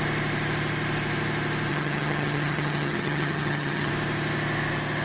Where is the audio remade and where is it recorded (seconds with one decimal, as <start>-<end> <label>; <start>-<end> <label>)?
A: 0.0-1.7 recorded; 1.7-3.9 remade; 3.9-5.0 recorded